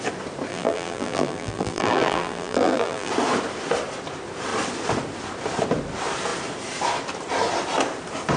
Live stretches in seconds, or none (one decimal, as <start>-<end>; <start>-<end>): 0.0-0.5; 3.1-8.4